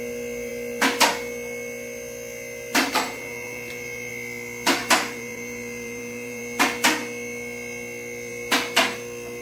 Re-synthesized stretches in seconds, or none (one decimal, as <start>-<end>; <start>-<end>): 2.8-4.1; 4.8-6.4